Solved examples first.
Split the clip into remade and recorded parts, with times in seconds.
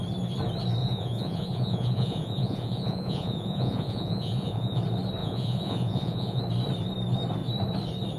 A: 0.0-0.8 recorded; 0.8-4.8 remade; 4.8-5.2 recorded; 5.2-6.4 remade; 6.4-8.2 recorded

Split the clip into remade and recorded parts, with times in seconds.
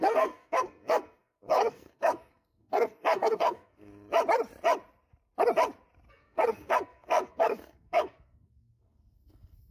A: 0.0-3.9 remade; 3.9-6.1 recorded; 6.1-9.7 remade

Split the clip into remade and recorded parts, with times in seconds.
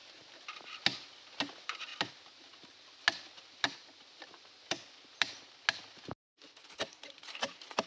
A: 0.0-7.9 recorded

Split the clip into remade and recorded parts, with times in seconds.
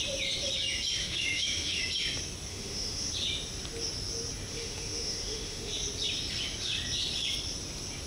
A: 0.0-1.0 recorded; 1.0-1.8 remade; 1.8-2.5 recorded; 2.5-3.1 remade; 3.1-4.5 recorded; 4.5-5.7 remade; 5.7-8.1 recorded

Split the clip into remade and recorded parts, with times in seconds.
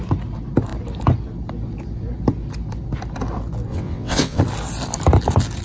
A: 0.0-3.7 recorded; 3.7-4.4 remade; 4.4-5.6 recorded